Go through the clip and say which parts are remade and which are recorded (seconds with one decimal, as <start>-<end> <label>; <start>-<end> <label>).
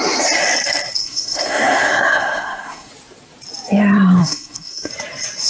0.0-1.0 recorded; 1.0-2.9 remade; 2.9-4.2 recorded; 4.2-4.9 remade; 4.9-5.5 recorded